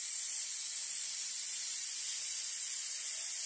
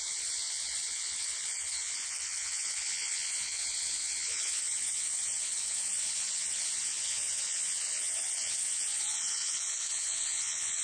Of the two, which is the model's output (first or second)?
second